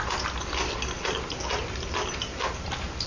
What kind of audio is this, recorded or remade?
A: recorded